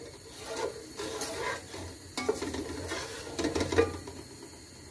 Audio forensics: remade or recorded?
recorded